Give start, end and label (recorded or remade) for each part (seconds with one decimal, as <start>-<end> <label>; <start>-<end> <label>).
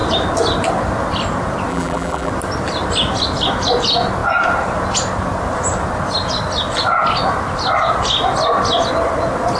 0.0-1.7 recorded; 1.7-2.3 remade; 2.3-9.6 recorded